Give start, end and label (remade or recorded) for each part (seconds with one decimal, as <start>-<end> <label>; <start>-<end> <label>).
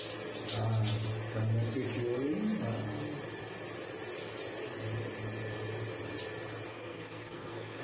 0.0-6.7 recorded; 6.7-7.8 remade